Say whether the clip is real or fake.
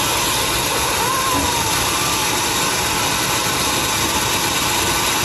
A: real